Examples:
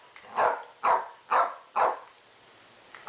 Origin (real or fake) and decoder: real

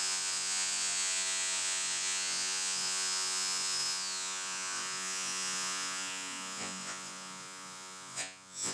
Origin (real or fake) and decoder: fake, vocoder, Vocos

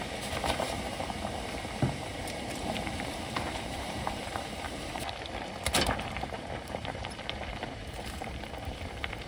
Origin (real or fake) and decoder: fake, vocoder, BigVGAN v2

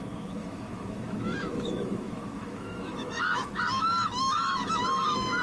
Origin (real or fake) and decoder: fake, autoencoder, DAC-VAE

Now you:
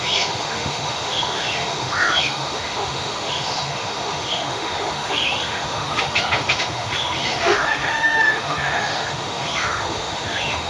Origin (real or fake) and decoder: fake, autoencoder, DAC-VAE